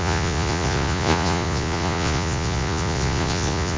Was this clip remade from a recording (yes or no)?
yes